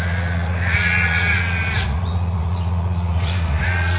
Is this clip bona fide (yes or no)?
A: no